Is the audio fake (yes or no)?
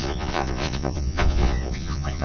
yes